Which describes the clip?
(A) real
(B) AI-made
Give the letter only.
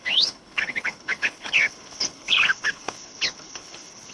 B